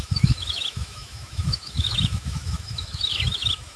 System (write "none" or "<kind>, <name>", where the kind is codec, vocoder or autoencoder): autoencoder, DAC-VAE